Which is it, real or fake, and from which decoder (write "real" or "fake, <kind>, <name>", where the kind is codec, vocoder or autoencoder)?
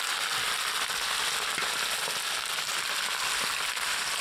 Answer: real